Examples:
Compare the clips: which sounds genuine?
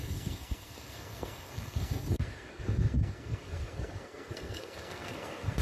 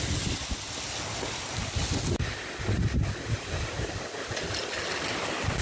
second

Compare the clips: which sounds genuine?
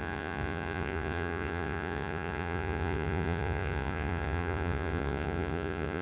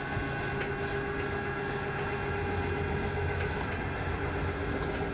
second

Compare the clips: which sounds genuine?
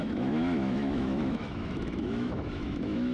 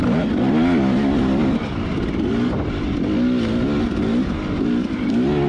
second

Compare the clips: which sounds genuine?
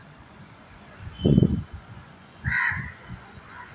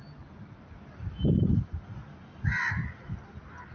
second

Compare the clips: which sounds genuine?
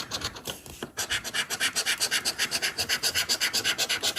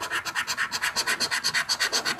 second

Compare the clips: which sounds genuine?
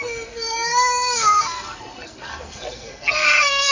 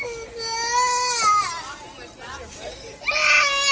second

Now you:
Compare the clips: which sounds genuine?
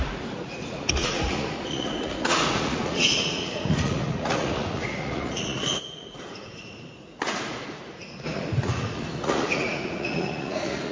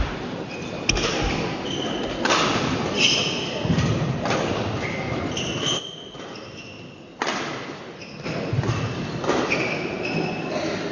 second